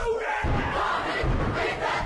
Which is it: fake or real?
real